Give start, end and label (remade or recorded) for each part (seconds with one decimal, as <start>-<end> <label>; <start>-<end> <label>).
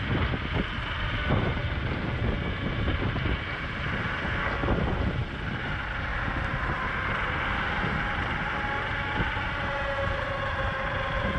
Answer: 0.0-11.4 recorded